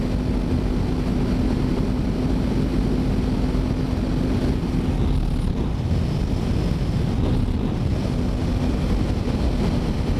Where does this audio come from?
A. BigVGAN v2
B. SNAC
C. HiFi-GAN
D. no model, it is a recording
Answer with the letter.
D